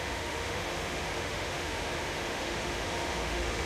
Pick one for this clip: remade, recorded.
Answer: remade